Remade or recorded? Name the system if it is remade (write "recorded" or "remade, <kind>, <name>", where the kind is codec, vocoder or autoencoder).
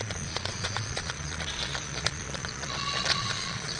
remade, vocoder, Vocos